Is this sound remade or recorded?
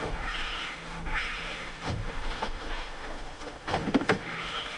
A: remade